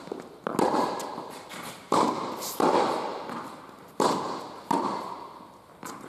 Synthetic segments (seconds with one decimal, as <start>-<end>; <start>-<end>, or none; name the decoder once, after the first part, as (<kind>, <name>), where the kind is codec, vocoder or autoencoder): 1.5-2.5 (vocoder, BigVGAN v2); 3.1-4.4